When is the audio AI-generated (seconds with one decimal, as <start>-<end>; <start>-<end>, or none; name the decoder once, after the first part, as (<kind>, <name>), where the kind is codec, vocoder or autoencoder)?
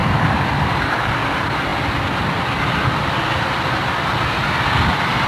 0.0-1.1 (vocoder, BigVGAN v2)